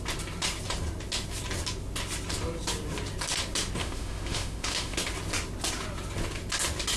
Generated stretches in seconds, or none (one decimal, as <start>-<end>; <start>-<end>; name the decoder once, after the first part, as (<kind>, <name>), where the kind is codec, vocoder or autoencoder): 3.8-5.0 (autoencoder, DAC-VAE)